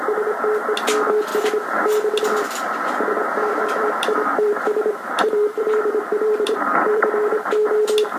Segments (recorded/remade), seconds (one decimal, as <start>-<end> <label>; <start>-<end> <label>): 0.0-3.4 recorded; 3.4-7.5 remade; 7.5-8.2 recorded